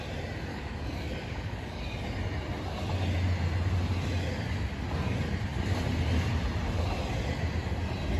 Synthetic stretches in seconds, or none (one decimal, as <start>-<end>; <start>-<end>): 0.5-1.8